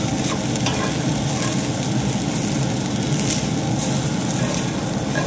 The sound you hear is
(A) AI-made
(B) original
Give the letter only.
B